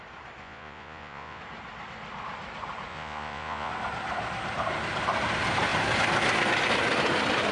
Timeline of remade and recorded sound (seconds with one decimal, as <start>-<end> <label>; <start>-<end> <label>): 0.0-0.4 recorded; 0.4-1.4 remade; 1.4-2.9 recorded; 2.9-3.7 remade; 3.7-7.5 recorded